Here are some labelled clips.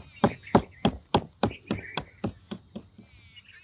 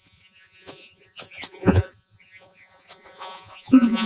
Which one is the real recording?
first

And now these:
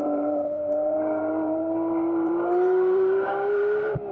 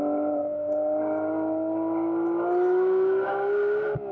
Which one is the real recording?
second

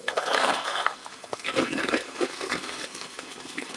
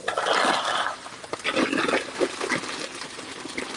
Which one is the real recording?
second